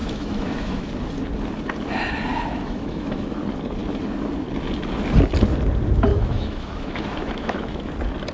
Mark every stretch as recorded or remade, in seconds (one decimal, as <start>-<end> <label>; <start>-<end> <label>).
0.0-0.9 remade; 0.9-2.3 recorded; 2.3-3.4 remade; 3.4-6.1 recorded; 6.1-7.9 remade; 7.9-8.3 recorded